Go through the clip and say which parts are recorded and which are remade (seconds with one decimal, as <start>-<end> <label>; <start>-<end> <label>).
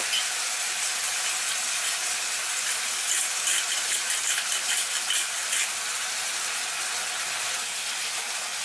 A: 0.0-8.6 recorded